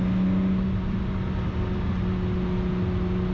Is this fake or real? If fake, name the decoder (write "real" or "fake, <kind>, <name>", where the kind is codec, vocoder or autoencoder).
real